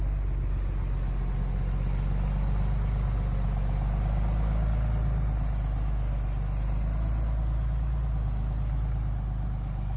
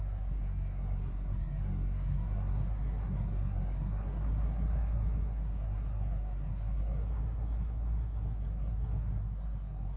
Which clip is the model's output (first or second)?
second